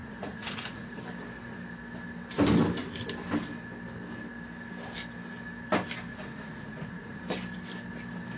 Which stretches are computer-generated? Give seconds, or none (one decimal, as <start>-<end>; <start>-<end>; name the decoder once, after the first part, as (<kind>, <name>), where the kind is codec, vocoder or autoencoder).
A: 0.0-1.0 (vocoder, Vocos); 6.1-7.2